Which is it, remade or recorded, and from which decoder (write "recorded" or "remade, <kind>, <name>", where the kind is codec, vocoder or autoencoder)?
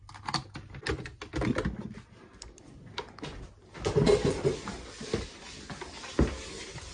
recorded